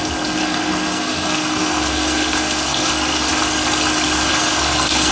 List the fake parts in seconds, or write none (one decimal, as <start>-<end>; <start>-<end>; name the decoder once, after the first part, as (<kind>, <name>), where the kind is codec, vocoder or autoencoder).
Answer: 0.4-3.3 (codec, SNAC); 4.3-5.1